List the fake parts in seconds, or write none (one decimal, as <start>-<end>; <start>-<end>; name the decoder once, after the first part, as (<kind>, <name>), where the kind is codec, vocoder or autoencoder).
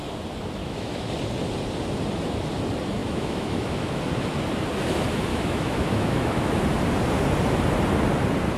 0.6-1.1 (autoencoder, DAC-VAE); 3.0-4.0; 5.3-6.5